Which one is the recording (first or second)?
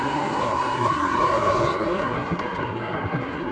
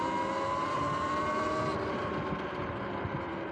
second